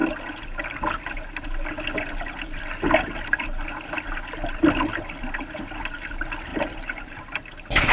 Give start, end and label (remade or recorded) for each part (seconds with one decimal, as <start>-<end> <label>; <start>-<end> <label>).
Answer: 0.0-6.5 recorded; 6.5-7.2 remade; 7.2-7.9 recorded